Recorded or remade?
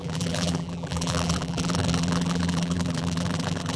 remade